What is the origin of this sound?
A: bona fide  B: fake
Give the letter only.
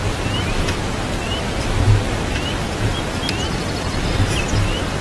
A